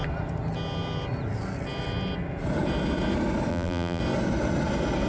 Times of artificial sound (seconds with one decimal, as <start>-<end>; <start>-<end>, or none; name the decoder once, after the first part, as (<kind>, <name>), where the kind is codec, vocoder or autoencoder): 3.5-4.0 (vocoder, BigVGAN v2)